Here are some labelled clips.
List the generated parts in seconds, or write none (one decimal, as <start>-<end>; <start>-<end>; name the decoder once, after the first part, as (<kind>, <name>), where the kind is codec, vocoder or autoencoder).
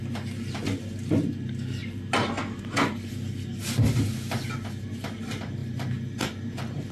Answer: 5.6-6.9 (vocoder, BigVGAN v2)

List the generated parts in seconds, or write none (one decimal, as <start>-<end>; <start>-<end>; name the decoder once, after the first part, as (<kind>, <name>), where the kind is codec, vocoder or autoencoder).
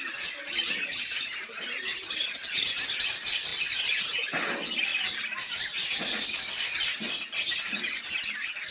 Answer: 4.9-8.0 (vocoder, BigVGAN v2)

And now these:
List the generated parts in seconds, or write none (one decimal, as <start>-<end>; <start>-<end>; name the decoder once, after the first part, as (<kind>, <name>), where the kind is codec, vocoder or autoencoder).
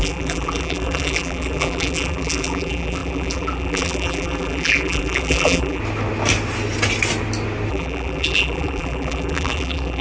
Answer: 0.0-5.8 (vocoder, BigVGAN v2); 7.7-10.0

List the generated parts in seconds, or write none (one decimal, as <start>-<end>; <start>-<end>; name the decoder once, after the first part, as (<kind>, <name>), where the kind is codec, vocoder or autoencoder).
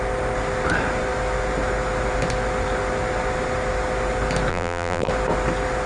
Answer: 4.5-5.1 (vocoder, BigVGAN v2)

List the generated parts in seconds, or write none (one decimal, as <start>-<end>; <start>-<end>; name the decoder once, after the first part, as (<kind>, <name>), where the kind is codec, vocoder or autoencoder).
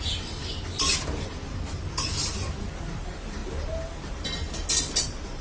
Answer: none